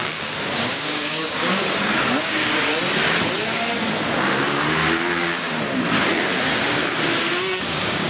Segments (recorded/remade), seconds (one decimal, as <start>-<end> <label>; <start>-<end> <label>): 0.0-2.7 remade; 2.7-7.6 recorded; 7.6-8.1 remade